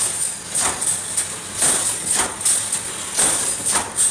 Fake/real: real